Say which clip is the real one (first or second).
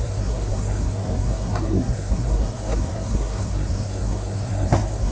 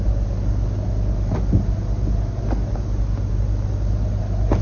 second